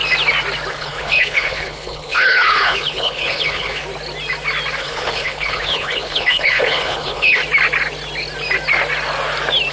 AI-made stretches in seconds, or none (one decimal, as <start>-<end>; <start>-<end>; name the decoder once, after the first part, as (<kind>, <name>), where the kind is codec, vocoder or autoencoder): 0.7-3.8 (codec, HILCodec); 4.8-7.4